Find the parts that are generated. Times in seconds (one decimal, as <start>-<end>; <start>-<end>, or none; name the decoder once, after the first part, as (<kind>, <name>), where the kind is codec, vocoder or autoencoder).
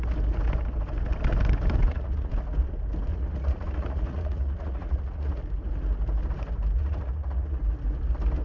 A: 1.8-2.3 (vocoder, Vocos); 3.1-5.4; 6.8-7.6